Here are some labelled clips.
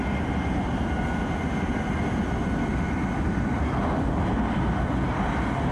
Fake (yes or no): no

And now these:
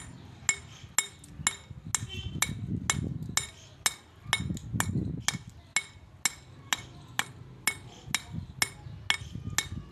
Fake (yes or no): no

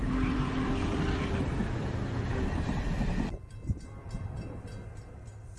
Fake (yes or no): yes